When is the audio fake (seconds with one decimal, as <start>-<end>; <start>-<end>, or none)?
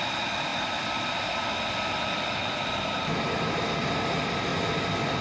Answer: none